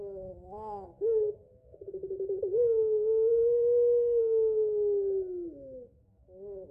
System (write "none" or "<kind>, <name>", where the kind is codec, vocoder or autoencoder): autoencoder, DAC-VAE